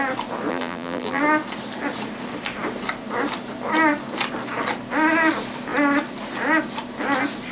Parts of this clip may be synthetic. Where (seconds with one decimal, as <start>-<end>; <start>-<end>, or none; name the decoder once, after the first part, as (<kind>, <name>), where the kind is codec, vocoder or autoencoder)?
0.5-1.2 (vocoder, BigVGAN v2)